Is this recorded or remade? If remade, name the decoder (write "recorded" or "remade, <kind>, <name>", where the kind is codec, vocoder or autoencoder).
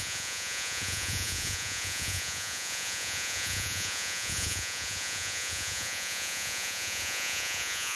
remade, vocoder, Vocos